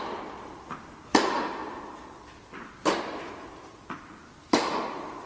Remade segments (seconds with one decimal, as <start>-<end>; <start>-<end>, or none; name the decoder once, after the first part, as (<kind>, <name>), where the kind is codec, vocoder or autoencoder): 0.0-1.6 (vocoder, BigVGAN v2); 4.8-5.3